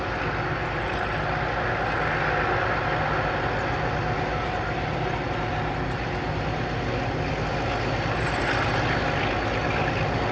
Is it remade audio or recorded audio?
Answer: recorded